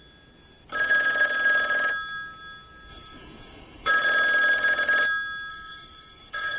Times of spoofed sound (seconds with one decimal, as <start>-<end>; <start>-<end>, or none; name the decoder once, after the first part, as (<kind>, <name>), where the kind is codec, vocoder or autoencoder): 2.9-3.9 (codec, DAC); 5.5-6.6